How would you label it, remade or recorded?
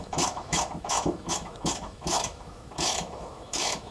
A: remade